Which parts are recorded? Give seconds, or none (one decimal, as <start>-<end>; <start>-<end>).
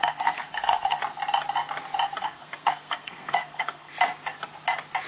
1.0-2.2; 3.9-5.1